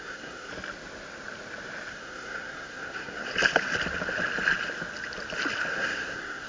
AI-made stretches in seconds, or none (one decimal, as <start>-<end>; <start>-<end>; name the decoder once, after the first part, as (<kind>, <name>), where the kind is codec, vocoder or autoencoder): 0.0-0.5 (codec, SNAC); 1.9-3.3; 5.7-6.5